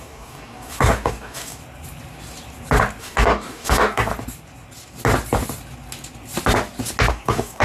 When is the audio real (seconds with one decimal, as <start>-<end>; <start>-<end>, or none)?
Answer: 1.6-3.0; 4.1-7.1